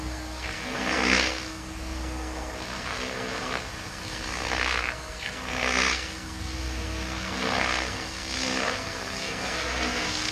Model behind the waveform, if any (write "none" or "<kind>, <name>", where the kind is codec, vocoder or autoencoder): codec, SNAC